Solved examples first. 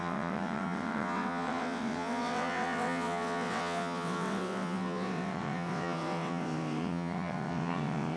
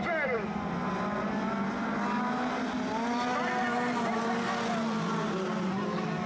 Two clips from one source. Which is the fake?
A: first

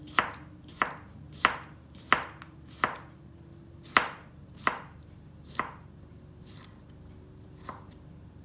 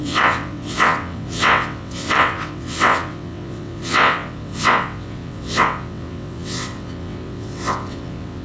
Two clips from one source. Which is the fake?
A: second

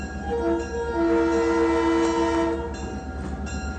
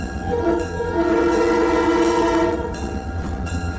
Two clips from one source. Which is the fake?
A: second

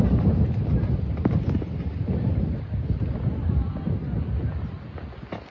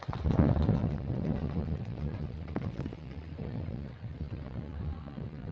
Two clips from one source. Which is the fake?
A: second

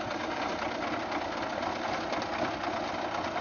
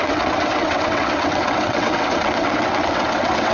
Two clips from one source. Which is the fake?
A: second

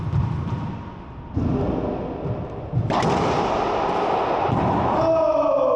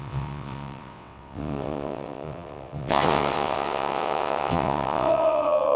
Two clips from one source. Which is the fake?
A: second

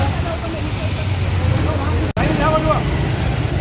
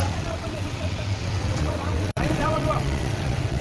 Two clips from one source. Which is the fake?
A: second